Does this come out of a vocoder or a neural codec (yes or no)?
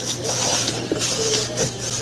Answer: no